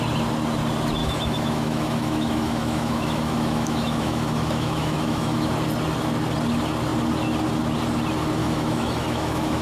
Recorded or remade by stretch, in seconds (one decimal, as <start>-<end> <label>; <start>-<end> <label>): 0.0-1.0 recorded; 1.0-5.5 remade; 5.5-8.4 recorded; 8.4-9.6 remade